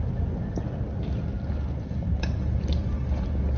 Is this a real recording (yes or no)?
yes